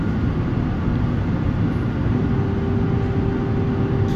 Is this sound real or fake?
real